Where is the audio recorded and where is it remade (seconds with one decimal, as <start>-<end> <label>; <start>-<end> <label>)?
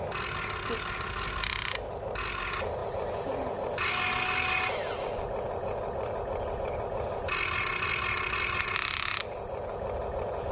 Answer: 0.0-10.5 recorded